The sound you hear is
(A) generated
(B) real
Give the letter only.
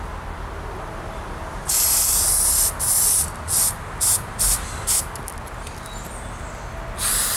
B